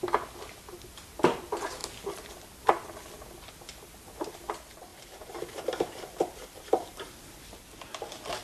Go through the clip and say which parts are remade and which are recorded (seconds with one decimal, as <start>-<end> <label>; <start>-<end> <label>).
0.0-4.9 recorded; 4.9-7.4 remade; 7.4-8.4 recorded

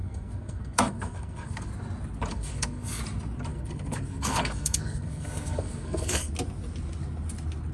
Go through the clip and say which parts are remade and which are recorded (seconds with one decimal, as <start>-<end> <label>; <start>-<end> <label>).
0.0-1.7 remade; 1.7-2.3 recorded; 2.3-3.0 remade; 3.0-3.5 recorded; 3.5-6.3 remade; 6.3-7.7 recorded

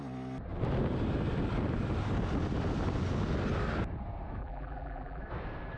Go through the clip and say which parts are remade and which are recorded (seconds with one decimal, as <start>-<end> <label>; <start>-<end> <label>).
0.0-4.4 recorded; 4.4-5.2 remade; 5.2-5.8 recorded

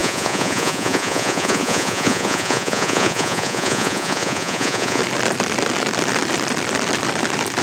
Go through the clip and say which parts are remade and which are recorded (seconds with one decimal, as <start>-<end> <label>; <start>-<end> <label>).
0.0-5.0 remade; 5.0-7.6 recorded